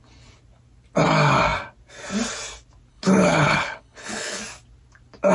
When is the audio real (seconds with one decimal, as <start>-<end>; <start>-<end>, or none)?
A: 0.0-2.9; 4.4-5.3